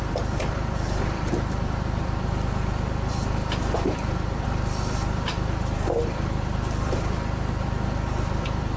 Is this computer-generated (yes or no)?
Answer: yes